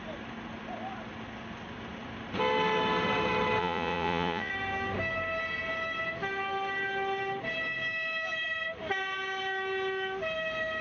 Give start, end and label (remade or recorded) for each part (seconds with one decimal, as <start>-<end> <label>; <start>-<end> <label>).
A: 0.0-3.6 recorded; 3.6-4.5 remade; 4.5-10.8 recorded